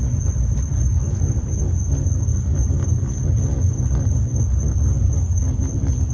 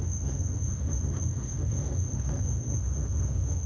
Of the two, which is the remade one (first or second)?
second